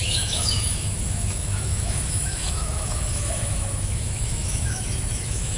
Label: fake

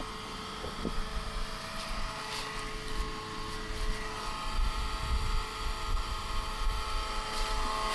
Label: real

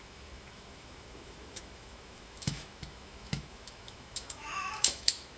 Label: fake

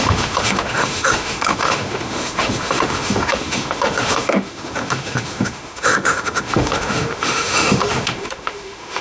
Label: fake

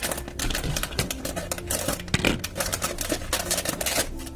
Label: real